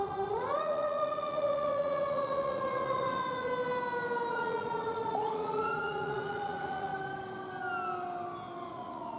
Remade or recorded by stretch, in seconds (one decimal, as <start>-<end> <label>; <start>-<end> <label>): 0.0-3.5 remade; 3.5-4.3 recorded; 4.3-6.9 remade; 6.9-8.7 recorded; 8.7-9.2 remade